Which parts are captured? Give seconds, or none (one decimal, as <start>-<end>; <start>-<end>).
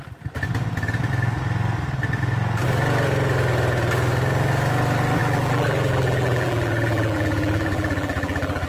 0.0-5.2